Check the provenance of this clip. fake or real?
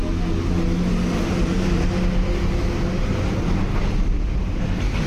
real